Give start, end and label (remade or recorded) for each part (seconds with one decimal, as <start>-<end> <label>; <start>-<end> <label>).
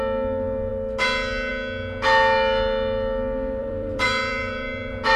0.0-3.6 recorded; 3.6-5.2 remade